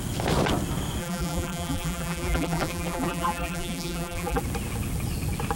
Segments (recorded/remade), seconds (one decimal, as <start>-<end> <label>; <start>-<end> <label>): 0.0-1.0 recorded; 1.0-4.4 remade; 4.4-5.6 recorded